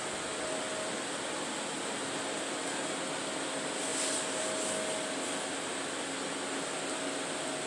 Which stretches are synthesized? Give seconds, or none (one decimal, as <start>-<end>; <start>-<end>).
none